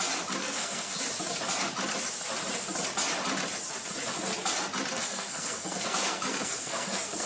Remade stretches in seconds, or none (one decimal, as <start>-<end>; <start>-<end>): 0.4-1.0; 4.9-7.3